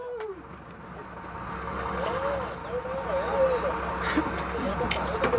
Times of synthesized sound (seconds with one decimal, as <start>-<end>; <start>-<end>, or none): 1.5-2.6; 4.2-4.7